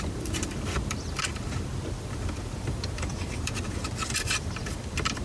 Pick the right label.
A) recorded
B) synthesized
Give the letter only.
B